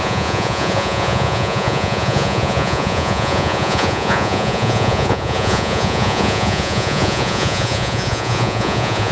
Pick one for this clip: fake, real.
fake